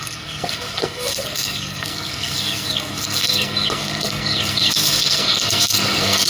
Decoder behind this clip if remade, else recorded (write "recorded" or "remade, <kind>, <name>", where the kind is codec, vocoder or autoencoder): remade, codec, SNAC